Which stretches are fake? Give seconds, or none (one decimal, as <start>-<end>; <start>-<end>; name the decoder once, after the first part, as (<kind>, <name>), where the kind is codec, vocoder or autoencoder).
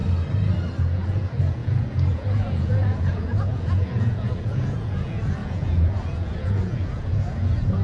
0.8-7.8 (vocoder, Vocos)